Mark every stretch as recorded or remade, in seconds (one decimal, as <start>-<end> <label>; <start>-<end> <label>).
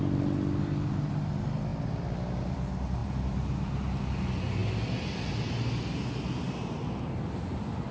0.0-3.0 recorded; 3.0-4.0 remade; 4.0-7.9 recorded